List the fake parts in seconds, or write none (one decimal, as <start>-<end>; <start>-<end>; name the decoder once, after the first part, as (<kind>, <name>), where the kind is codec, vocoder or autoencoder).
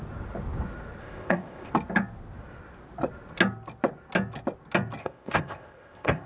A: 1.0-1.7 (codec, ZipCodec); 5.0-6.3